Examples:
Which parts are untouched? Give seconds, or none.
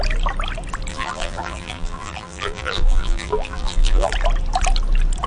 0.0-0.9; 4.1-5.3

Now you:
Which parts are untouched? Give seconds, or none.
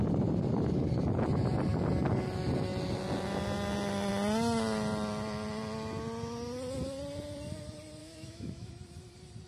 0.0-8.0; 8.7-9.5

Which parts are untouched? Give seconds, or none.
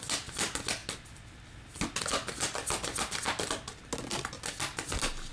0.0-5.3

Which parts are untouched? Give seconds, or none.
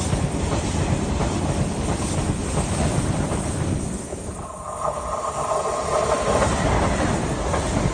0.0-7.9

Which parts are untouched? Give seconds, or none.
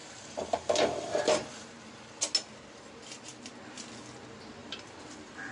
2.2-4.6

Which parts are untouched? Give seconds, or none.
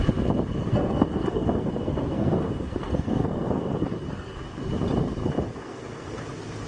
0.0-0.6; 4.6-5.6; 6.2-6.7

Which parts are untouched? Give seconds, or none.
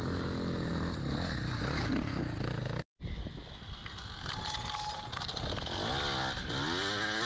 0.0-7.3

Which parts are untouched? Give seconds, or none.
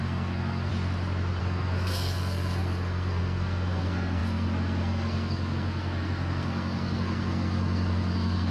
0.7-1.4